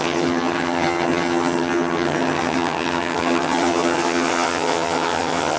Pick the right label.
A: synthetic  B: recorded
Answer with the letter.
A